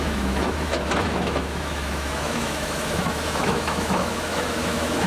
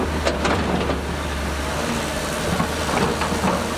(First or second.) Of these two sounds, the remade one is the first